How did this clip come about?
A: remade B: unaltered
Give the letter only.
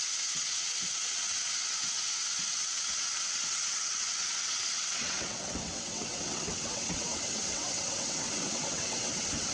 A